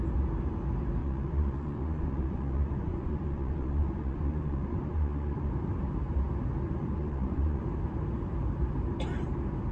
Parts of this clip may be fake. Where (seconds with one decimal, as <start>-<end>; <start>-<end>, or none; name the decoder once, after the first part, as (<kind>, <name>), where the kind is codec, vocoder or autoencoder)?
1.0-5.5 (vocoder, Vocos); 6.8-7.6